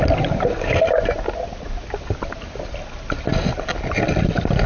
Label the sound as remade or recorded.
recorded